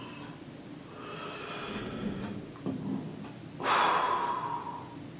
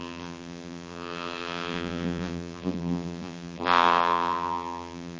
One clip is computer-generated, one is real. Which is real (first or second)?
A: first